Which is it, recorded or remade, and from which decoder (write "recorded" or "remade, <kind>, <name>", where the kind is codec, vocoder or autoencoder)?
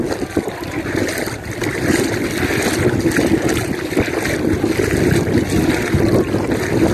recorded